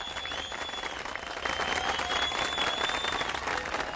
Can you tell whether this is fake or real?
real